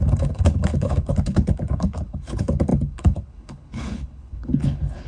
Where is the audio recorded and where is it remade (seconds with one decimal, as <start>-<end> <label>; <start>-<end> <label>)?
0.0-5.1 remade